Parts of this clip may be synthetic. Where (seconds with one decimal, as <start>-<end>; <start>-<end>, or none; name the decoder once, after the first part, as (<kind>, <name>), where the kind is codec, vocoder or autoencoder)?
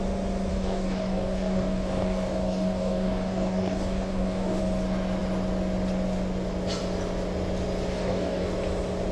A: 0.5-4.6 (codec, DAC); 7.9-8.5